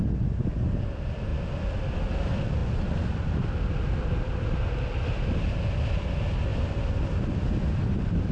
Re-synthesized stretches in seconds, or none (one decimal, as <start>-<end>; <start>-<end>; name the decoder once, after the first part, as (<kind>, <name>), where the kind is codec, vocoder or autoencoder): none